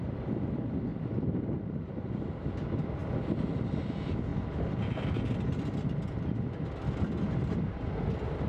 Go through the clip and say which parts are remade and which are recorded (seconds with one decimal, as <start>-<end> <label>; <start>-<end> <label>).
0.0-8.5 recorded